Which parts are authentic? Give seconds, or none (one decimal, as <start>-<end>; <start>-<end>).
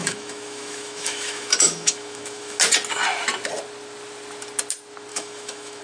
2.6-5.1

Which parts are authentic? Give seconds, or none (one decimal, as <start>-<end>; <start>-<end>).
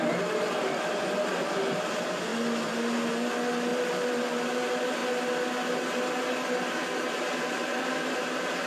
0.0-8.7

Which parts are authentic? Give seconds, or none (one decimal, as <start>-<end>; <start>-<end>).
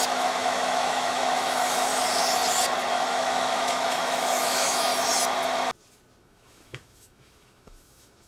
1.9-2.9; 4.9-6.2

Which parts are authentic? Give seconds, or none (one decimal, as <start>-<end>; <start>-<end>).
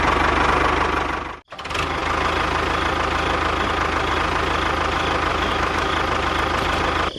0.0-5.3; 5.9-7.2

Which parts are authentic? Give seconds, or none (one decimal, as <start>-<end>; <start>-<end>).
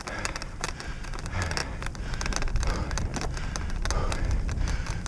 0.0-5.1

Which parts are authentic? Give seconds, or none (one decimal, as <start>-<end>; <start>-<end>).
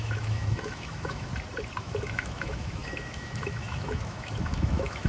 1.3-1.8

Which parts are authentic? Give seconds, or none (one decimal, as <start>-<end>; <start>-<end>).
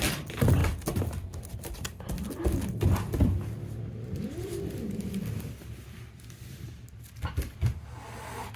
0.0-8.6